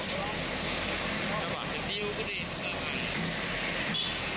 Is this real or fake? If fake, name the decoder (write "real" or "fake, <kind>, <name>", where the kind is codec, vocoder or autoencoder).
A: real